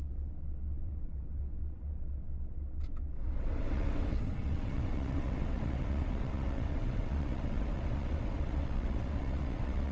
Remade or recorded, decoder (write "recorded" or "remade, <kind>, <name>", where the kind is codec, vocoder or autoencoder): remade, vocoder, WaveNeXt